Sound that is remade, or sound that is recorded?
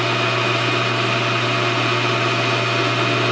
recorded